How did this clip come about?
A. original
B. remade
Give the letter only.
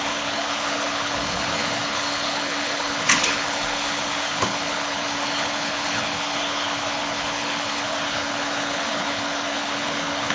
B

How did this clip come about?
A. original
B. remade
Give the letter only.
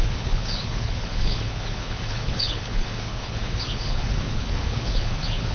B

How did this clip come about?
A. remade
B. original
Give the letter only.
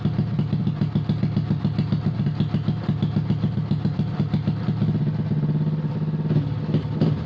B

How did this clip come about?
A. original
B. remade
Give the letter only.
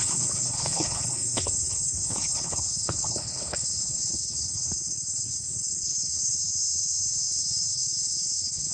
B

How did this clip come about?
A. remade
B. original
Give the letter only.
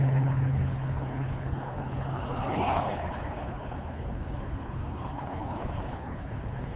A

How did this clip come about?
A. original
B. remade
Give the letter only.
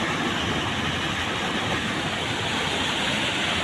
A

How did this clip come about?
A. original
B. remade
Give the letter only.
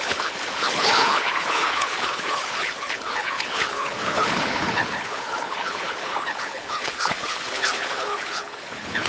B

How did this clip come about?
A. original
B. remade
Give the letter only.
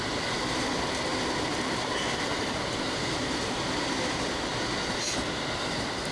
A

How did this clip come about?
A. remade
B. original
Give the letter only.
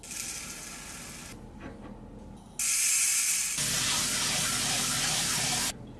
B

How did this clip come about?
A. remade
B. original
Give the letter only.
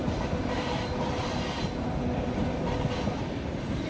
B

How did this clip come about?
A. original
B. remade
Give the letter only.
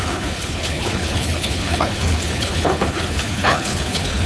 B